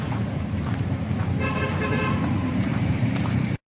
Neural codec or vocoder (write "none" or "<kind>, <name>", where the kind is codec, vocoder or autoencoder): vocoder, BigVGAN v2